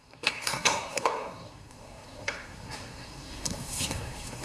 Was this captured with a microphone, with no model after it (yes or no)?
no